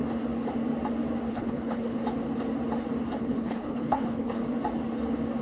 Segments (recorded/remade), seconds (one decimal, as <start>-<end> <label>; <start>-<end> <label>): 0.0-1.3 recorded; 1.3-2.0 remade; 2.0-3.2 recorded; 3.2-4.4 remade; 4.4-5.4 recorded